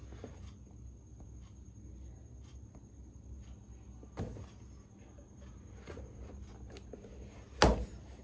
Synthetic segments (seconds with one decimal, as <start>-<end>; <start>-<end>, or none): none